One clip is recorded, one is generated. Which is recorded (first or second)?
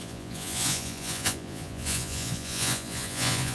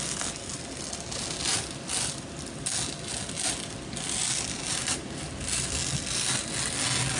second